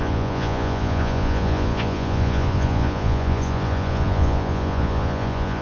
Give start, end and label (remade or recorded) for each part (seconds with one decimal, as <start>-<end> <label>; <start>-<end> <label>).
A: 0.0-5.6 remade